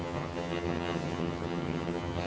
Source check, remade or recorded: remade